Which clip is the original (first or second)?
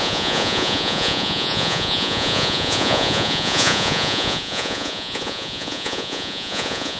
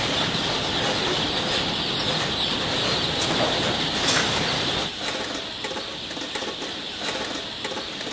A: second